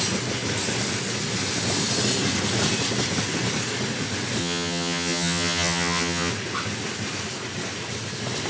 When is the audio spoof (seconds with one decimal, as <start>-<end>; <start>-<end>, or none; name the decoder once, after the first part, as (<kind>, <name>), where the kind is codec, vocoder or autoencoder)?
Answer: 4.4-6.3 (vocoder, HiFi-GAN)